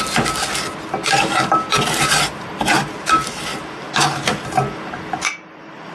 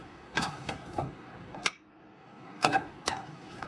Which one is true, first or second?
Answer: first